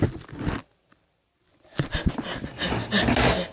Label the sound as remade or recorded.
recorded